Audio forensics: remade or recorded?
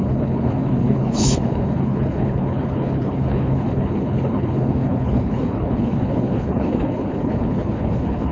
remade